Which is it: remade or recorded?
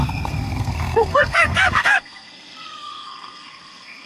remade